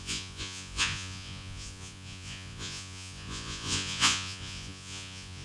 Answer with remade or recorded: remade